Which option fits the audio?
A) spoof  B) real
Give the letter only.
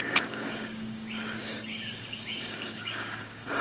A